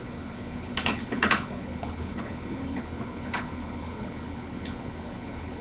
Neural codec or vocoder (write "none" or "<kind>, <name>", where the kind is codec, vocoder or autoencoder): codec, HILCodec